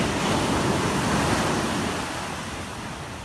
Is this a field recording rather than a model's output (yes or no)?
yes